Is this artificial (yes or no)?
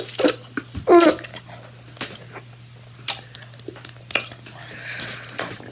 no